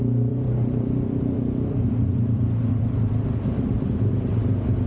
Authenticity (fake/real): fake